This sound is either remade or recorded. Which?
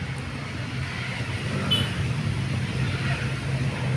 recorded